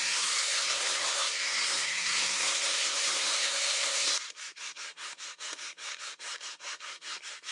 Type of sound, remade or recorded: remade